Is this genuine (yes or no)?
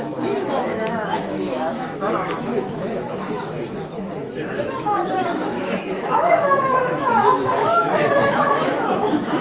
no